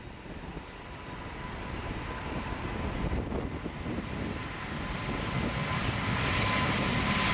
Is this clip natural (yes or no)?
yes